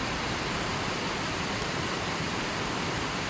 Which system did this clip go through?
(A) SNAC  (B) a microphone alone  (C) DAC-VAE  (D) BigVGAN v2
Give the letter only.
B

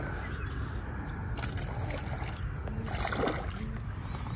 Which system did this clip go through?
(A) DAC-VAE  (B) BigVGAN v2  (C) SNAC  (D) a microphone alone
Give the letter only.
D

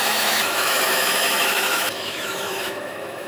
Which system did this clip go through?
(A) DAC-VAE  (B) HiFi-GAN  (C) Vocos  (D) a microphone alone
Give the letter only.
A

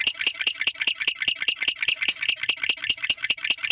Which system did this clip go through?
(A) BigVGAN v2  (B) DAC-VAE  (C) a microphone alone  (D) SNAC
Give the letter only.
C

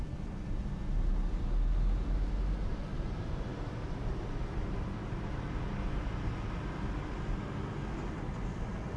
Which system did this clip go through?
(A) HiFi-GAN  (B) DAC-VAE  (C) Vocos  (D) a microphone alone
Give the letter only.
D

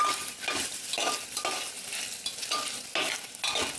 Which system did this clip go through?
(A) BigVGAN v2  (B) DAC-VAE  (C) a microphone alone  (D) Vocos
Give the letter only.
C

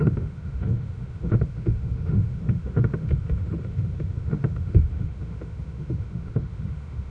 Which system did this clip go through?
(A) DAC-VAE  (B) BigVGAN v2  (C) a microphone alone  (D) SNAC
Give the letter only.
A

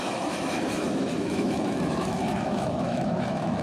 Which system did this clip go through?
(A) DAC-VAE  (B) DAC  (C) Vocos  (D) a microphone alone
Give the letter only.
A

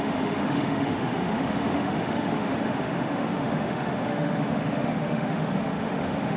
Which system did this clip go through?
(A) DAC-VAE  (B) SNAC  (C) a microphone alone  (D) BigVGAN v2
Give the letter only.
A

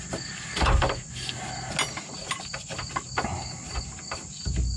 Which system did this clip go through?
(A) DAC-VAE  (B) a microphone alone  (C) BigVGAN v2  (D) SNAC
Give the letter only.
B